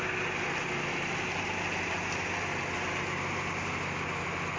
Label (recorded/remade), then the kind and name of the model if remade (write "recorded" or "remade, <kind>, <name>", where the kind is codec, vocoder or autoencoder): recorded